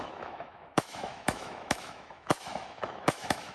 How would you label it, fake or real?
fake